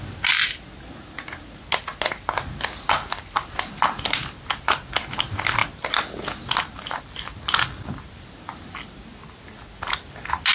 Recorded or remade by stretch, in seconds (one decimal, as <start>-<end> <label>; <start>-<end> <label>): 0.0-10.5 recorded